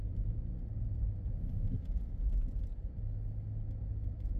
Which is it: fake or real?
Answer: real